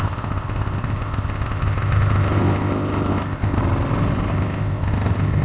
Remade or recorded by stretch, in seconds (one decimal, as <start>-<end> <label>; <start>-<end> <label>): 0.0-3.6 remade; 3.6-4.3 recorded; 4.3-5.4 remade